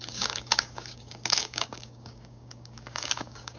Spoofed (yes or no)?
yes